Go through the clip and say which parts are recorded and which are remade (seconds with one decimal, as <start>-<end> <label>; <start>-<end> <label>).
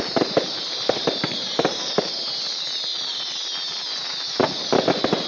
0.0-1.0 recorded; 1.0-1.9 remade; 1.9-5.3 recorded